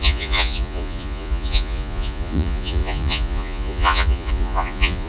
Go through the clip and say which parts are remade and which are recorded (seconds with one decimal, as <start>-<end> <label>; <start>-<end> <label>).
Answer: 0.0-5.1 remade